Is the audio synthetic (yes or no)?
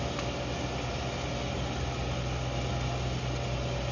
no